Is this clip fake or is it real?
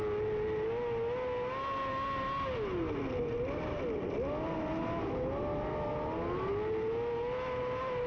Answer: real